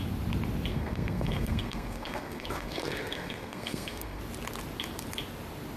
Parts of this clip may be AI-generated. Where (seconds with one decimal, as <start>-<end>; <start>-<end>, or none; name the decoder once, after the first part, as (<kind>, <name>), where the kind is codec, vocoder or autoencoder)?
0.7-4.2 (codec, SNAC)